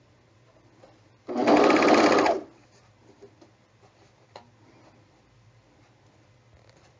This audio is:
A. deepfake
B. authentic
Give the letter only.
B